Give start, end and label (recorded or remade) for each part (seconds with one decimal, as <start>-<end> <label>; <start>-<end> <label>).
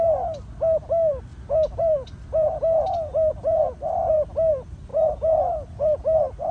0.0-1.3 remade; 1.3-1.8 recorded; 1.8-6.5 remade